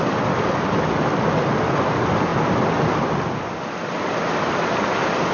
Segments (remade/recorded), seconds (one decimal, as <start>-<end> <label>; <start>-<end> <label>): 0.0-5.3 recorded